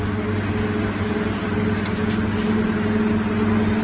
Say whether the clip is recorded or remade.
recorded